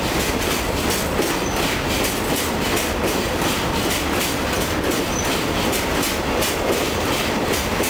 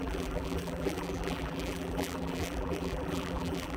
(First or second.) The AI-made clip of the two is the second